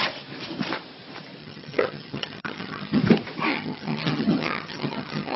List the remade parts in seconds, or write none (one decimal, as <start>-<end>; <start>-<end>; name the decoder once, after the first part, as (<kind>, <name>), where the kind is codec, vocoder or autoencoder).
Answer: 1.4-3.0 (vocoder, HiFi-GAN); 3.5-5.4